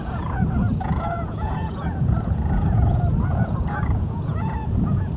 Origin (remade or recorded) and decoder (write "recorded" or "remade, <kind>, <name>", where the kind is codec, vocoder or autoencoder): remade, vocoder, Vocos